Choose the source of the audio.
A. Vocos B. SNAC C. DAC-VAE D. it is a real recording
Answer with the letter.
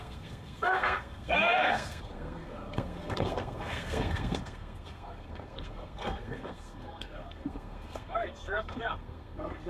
B